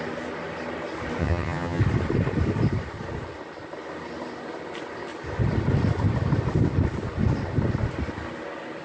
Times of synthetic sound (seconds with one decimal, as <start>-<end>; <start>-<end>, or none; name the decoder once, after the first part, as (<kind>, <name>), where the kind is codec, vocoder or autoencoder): 1.2-1.8 (vocoder, HiFi-GAN)